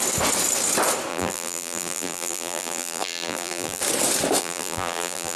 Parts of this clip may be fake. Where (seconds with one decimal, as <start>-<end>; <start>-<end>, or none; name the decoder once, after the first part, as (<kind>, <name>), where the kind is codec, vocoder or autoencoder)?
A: 1.1-3.8 (vocoder, BigVGAN v2); 4.4-5.4